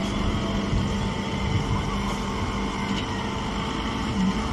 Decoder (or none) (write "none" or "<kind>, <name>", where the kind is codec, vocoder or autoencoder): none